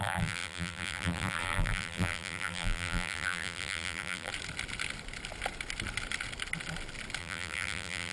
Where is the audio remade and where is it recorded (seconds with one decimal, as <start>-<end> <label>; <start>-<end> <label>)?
0.0-4.3 remade; 4.3-7.2 recorded; 7.2-8.1 remade